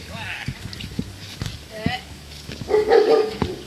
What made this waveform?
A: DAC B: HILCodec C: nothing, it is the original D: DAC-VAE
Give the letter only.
A